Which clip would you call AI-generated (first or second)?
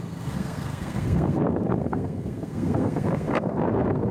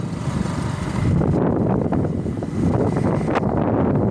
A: first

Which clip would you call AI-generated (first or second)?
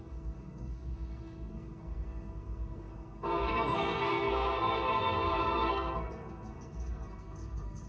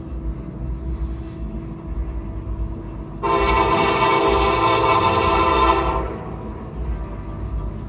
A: first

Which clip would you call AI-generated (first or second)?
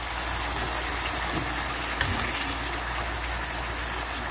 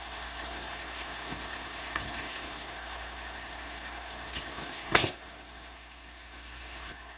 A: second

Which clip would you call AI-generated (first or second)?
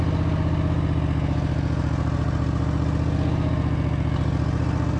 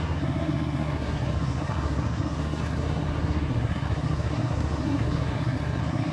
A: second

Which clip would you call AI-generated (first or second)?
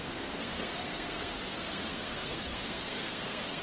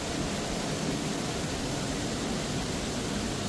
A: first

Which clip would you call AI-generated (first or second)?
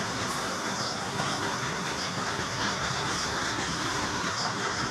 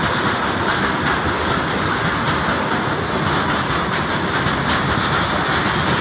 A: first